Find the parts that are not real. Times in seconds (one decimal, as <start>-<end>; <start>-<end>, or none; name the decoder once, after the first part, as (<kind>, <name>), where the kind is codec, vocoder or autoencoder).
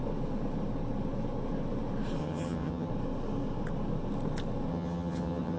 2.2-2.9 (vocoder, HiFi-GAN); 4.7-5.6